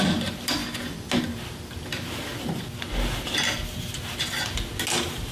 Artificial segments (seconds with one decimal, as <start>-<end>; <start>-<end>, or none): none